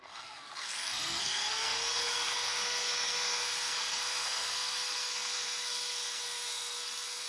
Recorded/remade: remade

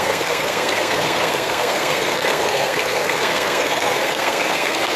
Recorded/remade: remade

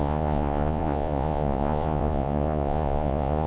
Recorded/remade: remade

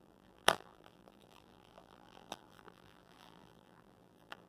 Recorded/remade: remade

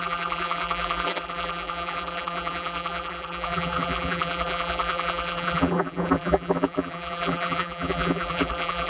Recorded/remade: remade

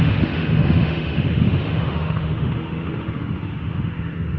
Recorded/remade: remade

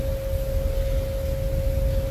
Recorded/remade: recorded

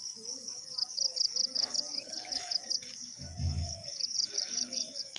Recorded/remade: remade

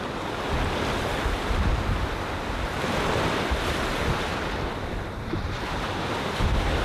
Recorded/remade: recorded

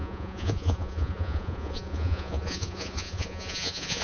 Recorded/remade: remade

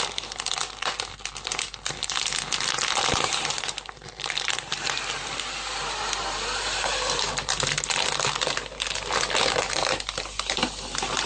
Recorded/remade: recorded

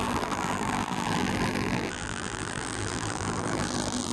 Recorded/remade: remade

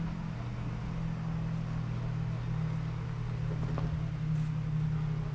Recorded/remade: recorded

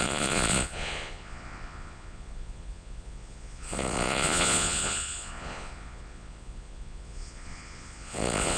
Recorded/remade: remade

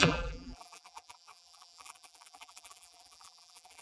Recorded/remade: remade